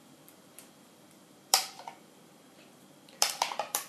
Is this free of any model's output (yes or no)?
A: no